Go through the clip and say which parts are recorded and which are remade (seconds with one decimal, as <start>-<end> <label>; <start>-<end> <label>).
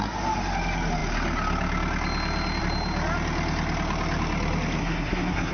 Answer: 0.0-4.8 recorded; 4.8-5.5 remade